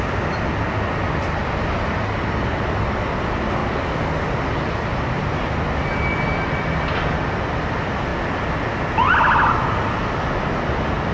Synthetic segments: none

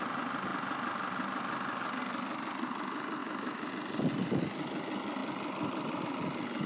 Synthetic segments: 3.2-3.7 (autoencoder, DAC-VAE)

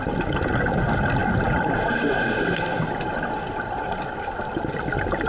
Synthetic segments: none

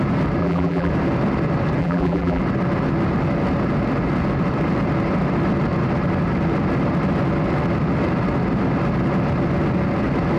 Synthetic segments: 0.4-0.9 (vocoder, BigVGAN v2); 1.8-2.4

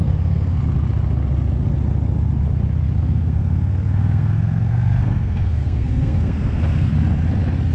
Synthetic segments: 0.0-0.6 (codec, SNAC); 3.0-6.9